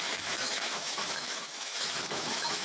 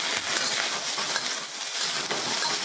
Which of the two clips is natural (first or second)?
second